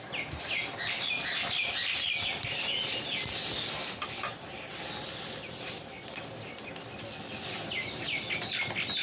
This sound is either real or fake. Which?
real